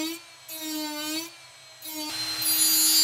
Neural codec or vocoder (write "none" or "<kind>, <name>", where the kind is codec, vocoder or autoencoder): none